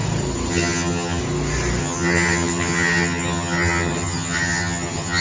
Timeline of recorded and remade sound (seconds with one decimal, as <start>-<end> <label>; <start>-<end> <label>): 0.0-0.5 recorded; 0.5-1.2 remade; 1.2-1.8 recorded; 1.8-5.2 remade